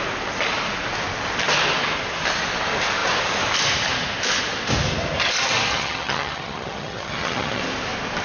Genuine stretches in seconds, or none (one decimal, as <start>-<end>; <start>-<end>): 0.0-5.7; 7.6-8.2